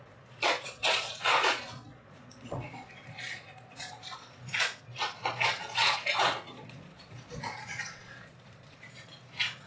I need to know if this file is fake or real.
fake